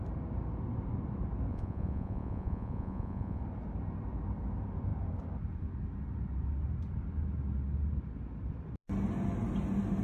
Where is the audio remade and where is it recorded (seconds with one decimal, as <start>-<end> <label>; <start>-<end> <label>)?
0.0-1.5 recorded; 1.5-3.4 remade; 3.4-10.0 recorded

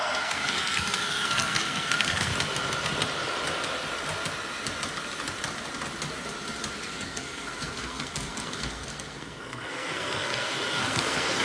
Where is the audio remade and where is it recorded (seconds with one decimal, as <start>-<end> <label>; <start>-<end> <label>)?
0.0-2.3 remade; 2.3-6.8 recorded; 6.8-11.4 remade

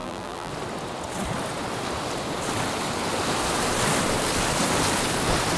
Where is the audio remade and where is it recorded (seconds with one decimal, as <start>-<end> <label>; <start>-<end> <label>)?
0.0-0.5 remade; 0.5-5.6 recorded

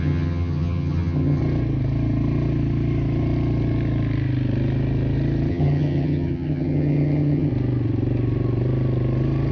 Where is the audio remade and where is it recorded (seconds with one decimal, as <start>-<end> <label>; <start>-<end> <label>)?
0.0-1.4 remade; 1.4-5.5 recorded; 5.5-7.5 remade; 7.5-9.5 recorded

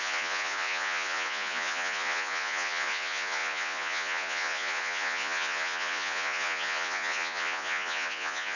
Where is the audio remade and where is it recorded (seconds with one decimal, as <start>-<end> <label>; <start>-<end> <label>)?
0.0-8.6 remade